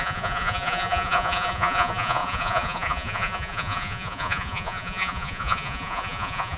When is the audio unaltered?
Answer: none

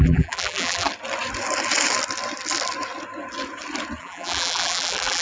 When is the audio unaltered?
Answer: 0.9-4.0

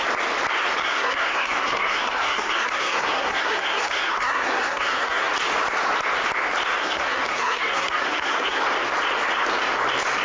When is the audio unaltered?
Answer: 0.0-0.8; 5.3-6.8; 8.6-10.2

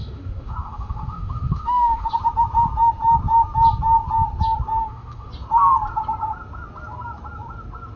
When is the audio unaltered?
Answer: 2.1-4.8; 5.3-8.0